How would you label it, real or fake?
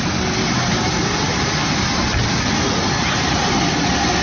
real